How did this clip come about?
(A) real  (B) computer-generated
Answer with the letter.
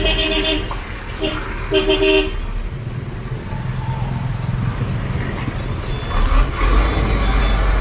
A